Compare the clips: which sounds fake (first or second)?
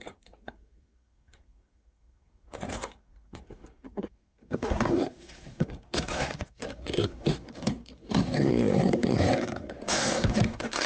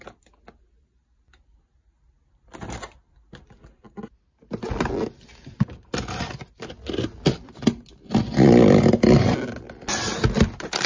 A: first